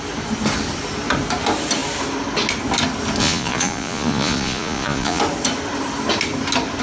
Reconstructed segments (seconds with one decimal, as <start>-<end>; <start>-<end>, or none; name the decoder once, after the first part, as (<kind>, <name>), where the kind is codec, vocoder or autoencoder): 3.2-5.2 (vocoder, Vocos)

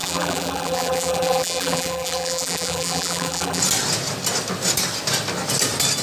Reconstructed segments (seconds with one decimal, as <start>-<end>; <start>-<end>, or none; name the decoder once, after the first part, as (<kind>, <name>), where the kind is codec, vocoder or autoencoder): 0.0-3.6 (vocoder, BigVGAN v2)

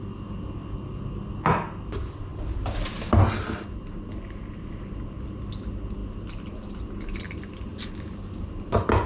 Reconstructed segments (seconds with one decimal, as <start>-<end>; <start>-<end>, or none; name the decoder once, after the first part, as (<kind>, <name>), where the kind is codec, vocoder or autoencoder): 7.7-8.5 (vocoder, BigVGAN v2)

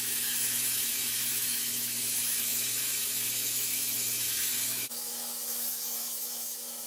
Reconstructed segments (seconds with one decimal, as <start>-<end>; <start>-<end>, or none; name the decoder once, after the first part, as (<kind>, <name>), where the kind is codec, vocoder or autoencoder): 0.0-6.9 (autoencoder, DAC-VAE)

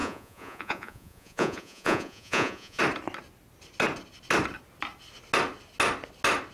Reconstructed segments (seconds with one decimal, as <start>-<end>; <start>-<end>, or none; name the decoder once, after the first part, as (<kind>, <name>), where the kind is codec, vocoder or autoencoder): 0.0-2.8 (vocoder, Vocos)

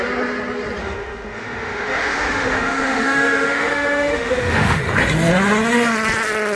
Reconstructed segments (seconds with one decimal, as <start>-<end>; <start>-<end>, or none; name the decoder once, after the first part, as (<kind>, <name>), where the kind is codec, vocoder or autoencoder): 0.8-4.8 (autoencoder, DAC-VAE)

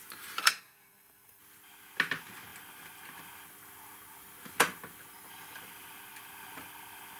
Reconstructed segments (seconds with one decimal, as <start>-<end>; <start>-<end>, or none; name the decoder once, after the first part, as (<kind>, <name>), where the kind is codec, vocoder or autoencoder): 0.4-1.4 (codec, SNAC)

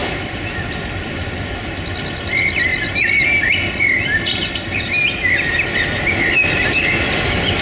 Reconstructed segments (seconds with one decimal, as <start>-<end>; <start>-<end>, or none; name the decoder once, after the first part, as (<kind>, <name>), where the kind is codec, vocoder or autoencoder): none